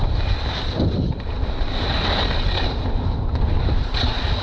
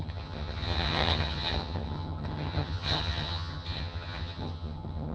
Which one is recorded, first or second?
first